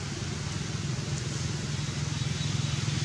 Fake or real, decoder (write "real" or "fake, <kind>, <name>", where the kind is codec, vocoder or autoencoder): real